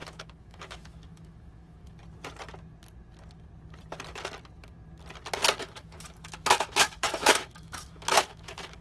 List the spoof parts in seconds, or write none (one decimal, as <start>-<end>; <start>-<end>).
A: 0.0-2.0; 5.6-8.8